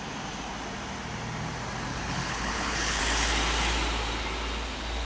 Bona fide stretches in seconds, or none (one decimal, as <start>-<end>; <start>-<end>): 0.0-1.9; 3.0-5.0